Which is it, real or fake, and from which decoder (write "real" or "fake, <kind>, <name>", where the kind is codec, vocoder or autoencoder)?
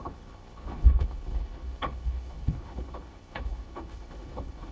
fake, codec, HILCodec